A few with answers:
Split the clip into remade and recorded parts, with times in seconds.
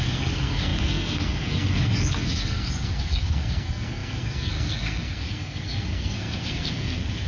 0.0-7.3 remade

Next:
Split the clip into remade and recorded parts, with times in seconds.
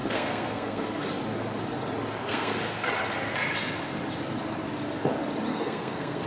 0.0-1.0 remade; 1.0-2.2 recorded; 2.2-2.9 remade; 2.9-5.5 recorded; 5.5-6.3 remade